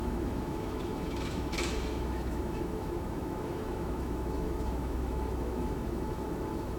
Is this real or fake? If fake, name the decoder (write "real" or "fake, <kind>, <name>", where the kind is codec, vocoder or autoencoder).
fake, autoencoder, DAC-VAE